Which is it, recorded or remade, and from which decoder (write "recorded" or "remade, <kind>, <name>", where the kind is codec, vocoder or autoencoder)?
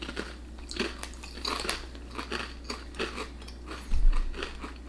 recorded